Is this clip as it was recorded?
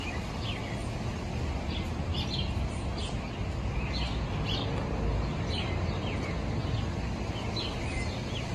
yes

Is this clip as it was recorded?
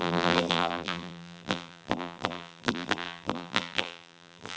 no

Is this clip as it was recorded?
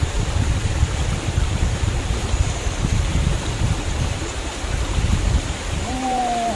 no